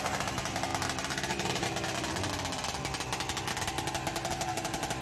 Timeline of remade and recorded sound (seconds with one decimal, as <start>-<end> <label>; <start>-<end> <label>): 0.0-5.0 recorded